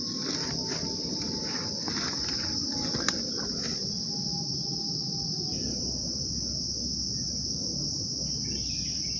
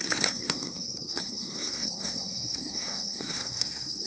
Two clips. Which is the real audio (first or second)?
first